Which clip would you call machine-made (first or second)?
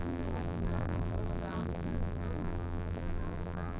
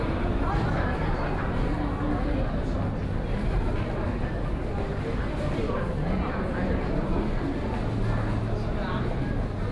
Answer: first